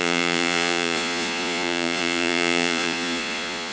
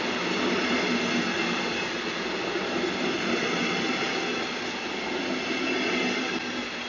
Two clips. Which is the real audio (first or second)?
second